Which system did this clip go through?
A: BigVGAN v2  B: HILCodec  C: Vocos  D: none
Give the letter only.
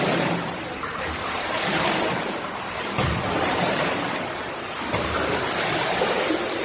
A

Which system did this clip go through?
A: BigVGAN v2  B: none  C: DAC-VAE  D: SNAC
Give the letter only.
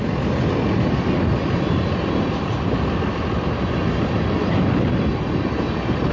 B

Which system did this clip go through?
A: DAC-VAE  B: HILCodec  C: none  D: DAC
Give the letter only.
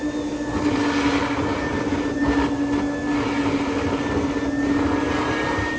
C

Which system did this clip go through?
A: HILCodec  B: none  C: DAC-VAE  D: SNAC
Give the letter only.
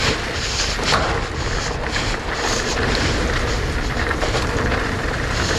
B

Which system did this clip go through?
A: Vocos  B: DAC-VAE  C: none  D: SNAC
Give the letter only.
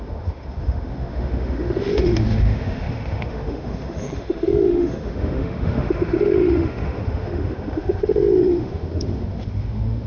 B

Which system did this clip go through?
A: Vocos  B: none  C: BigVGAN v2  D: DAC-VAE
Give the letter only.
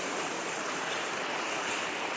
C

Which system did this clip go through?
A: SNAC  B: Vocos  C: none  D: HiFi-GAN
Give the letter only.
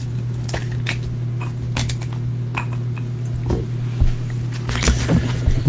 C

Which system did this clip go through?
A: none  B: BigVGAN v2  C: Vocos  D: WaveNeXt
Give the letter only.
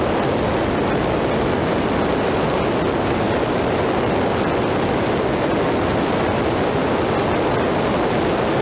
A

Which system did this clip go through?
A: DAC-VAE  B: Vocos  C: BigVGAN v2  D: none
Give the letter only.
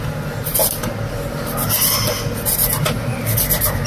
D